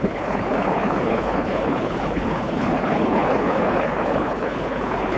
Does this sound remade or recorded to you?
remade